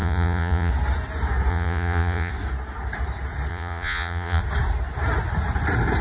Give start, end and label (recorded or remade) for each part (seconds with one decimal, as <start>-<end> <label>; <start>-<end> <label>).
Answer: 0.0-0.7 remade; 0.7-1.5 recorded; 1.5-2.3 remade; 2.3-3.5 recorded; 3.5-4.4 remade; 4.4-6.0 recorded